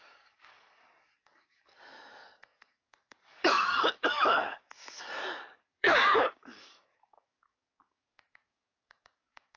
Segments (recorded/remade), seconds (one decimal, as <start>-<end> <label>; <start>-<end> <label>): 0.0-9.6 remade